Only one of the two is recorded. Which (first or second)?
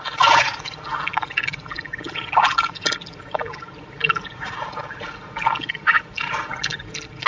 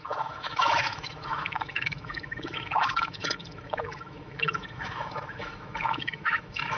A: first